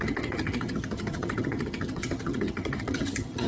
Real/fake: fake